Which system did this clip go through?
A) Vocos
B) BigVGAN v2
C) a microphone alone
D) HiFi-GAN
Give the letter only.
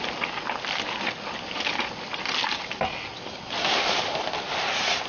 C